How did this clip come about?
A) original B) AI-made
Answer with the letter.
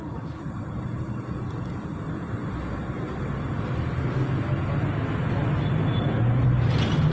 A